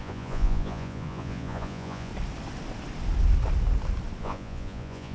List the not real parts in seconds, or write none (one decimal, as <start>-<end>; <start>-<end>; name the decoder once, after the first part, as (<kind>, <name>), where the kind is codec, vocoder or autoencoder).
0.0-2.1 (vocoder, Vocos); 4.2-5.1